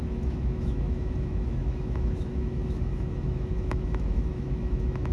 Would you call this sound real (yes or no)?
no